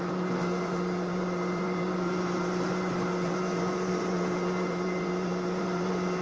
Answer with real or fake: fake